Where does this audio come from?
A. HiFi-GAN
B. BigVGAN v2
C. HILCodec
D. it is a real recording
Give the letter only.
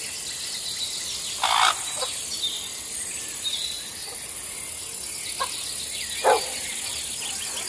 D